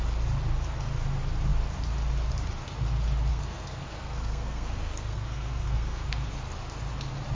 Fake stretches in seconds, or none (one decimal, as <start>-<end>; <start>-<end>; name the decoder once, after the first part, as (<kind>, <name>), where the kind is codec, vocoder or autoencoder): 3.3-6.3 (codec, SNAC)